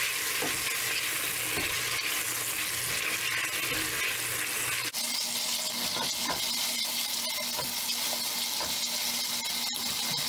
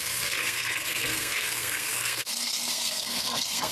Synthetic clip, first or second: second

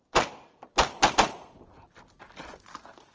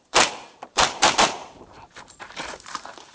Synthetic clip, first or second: second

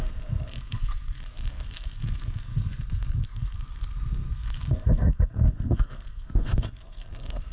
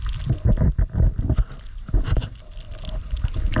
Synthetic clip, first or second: first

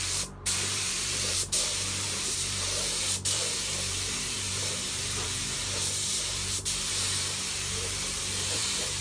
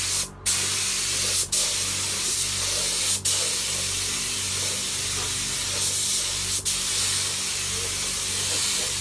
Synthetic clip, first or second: first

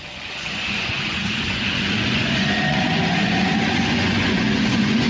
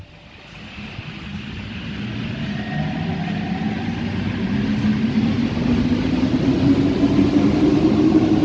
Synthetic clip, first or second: first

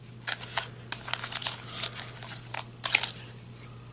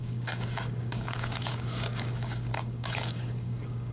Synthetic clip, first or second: second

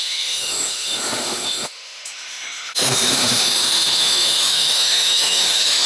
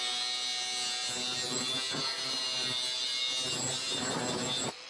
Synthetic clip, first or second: first